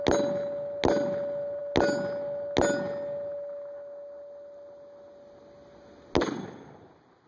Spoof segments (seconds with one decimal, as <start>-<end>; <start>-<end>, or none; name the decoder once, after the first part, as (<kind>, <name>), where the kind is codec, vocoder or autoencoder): none